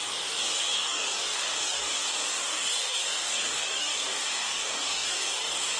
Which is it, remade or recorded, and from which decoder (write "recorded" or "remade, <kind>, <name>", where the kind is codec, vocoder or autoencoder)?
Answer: remade, codec, DAC